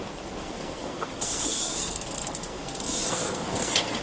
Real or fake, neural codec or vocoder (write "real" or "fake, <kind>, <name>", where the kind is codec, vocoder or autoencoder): fake, codec, SNAC